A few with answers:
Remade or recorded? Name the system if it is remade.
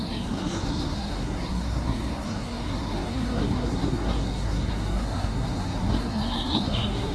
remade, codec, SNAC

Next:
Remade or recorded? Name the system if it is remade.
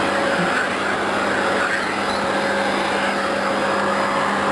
recorded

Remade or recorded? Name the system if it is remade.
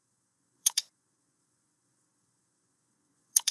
remade, vocoder, Vocos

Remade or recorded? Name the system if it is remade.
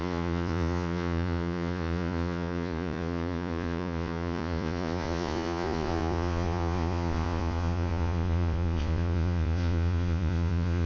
remade, vocoder, Vocos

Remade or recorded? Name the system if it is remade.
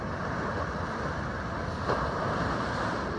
recorded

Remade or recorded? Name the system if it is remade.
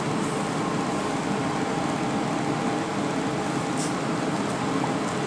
recorded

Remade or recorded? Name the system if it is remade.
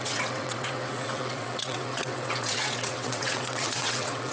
remade, vocoder, WaveNeXt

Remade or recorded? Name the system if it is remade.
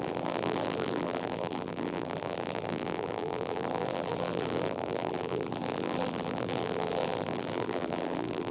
remade, vocoder, BigVGAN v2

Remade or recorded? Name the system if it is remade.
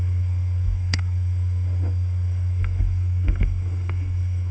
remade, codec, SNAC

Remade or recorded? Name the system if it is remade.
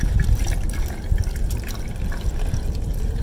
recorded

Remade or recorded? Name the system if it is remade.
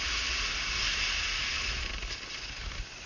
recorded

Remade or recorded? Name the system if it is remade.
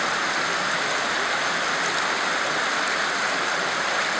recorded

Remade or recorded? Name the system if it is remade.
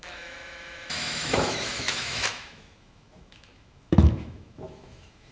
remade, autoencoder, DAC-VAE